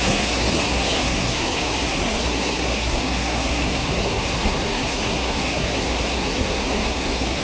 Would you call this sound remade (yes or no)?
yes